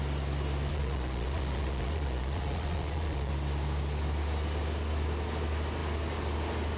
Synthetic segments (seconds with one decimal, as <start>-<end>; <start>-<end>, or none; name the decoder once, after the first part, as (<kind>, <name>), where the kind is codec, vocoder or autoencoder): 0.7-3.3 (vocoder, Vocos)